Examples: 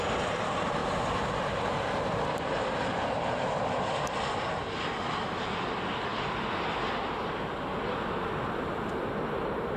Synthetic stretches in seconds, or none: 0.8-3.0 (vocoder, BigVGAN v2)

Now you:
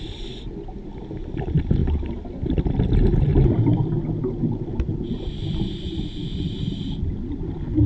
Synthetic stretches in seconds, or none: none

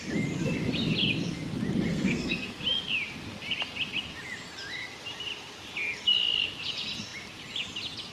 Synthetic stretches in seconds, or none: 1.9-2.6 (codec, SNAC)

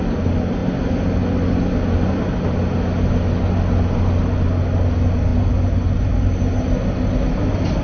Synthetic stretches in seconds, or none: none

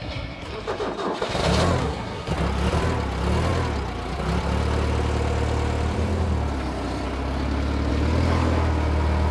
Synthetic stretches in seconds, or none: 0.0-0.5 (codec, SNAC); 1.8-2.3

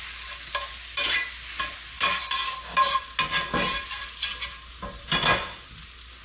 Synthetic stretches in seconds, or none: none

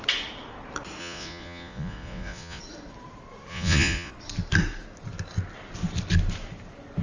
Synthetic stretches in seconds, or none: 1.0-2.6 (vocoder, Vocos); 3.5-4.1

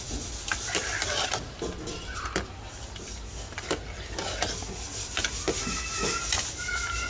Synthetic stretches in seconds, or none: 5.6-6.2 (autoencoder, DAC-VAE)